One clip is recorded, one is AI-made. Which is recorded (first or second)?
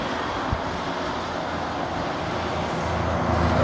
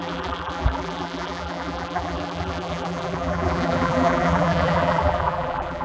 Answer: first